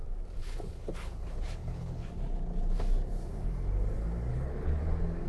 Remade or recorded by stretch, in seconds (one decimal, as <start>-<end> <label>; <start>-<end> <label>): 0.0-0.4 recorded; 0.4-2.1 remade; 2.1-4.3 recorded; 4.3-4.8 remade; 4.8-5.3 recorded